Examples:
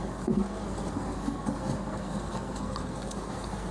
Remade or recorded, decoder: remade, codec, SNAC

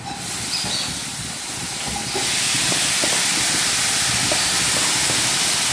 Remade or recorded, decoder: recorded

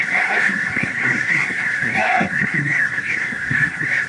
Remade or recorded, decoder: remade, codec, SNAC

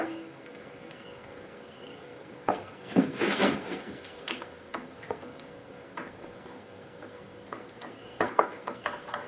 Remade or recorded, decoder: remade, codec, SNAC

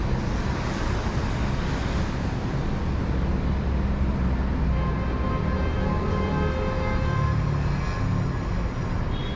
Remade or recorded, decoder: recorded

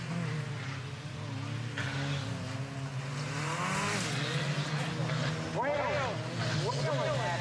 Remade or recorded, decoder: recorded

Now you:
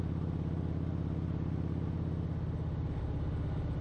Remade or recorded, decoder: recorded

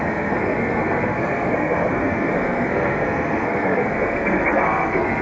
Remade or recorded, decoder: remade, codec, SNAC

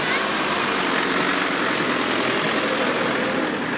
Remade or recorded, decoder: recorded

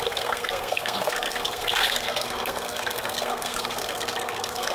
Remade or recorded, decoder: remade, codec, SNAC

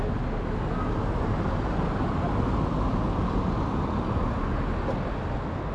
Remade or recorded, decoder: recorded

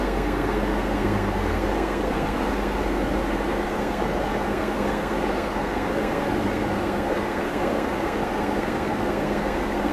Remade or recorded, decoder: remade, codec, SNAC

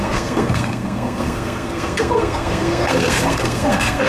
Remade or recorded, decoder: remade, codec, SNAC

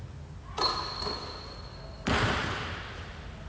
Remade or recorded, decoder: recorded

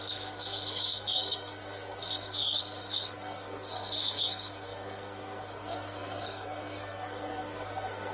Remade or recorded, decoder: remade, codec, SNAC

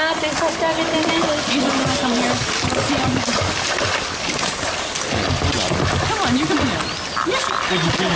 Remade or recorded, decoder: recorded